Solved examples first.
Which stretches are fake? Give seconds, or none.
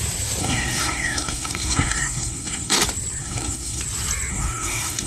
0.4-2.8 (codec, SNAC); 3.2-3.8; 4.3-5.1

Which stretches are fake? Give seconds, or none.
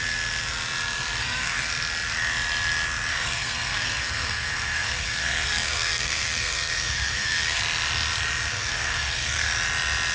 1.2-1.7 (codec, SNAC); 3.1-7.6; 8.5-9.5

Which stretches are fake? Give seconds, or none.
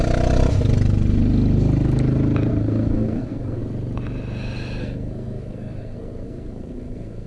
2.5-3.6 (codec, SNAC); 4.8-7.3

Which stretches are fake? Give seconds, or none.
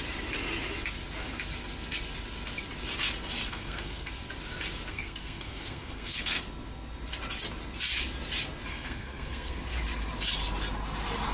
3.5-4.1 (codec, SNAC); 4.9-6.4; 8.7-9.6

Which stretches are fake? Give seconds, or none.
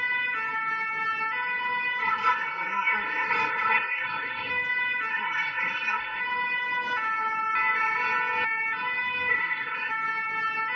2.0-4.5 (codec, SNAC); 5.1-6.2; 9.3-9.9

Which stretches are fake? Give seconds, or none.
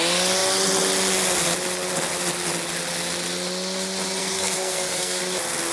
4.2-5.2 (codec, SNAC)